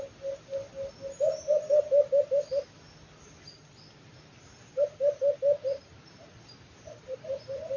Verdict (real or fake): real